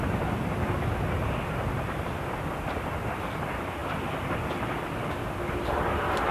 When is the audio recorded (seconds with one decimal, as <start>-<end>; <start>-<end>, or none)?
0.0-6.3